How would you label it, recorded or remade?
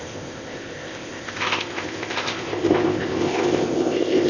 remade